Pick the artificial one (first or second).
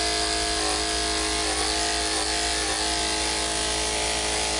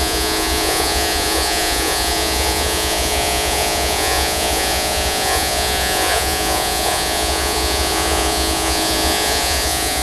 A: second